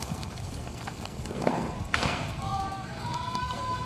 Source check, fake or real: fake